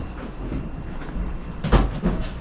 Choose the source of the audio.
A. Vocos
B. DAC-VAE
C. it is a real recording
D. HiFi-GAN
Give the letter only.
C